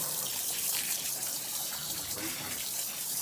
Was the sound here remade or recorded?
remade